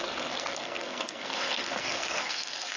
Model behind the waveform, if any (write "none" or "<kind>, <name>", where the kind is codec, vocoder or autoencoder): codec, SNAC